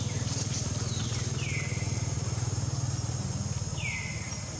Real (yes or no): yes